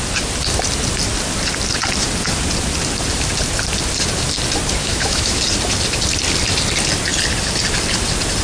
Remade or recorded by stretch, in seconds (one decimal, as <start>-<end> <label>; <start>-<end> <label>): 0.0-4.8 recorded; 4.8-5.4 remade; 5.4-8.4 recorded